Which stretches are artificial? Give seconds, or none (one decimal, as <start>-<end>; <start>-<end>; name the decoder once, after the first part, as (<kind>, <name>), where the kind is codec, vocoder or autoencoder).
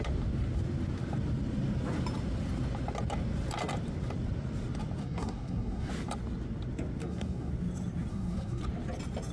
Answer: 5.0-5.9 (codec, SNAC); 7.0-7.5; 8.1-8.6